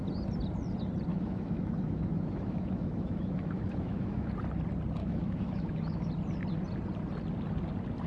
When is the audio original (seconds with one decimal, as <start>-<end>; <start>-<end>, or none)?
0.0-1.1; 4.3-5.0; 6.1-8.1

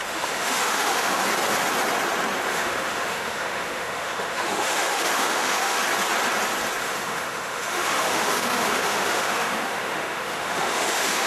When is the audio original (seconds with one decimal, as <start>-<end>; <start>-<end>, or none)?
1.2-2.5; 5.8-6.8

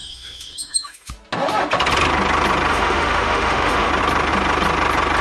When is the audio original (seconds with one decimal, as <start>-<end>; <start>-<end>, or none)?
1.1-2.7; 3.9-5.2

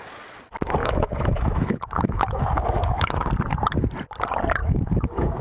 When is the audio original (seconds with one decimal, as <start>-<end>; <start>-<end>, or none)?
0.0-0.8; 3.3-4.6

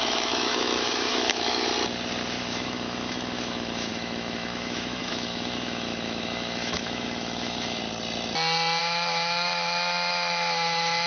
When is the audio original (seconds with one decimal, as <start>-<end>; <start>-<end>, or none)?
1.7-2.4; 7.8-8.8